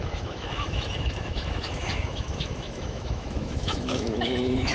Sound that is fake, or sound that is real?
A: fake